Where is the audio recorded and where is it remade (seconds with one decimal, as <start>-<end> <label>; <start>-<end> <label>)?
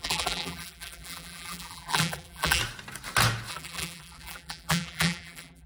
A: 0.0-2.6 remade; 2.6-3.5 recorded; 3.5-5.7 remade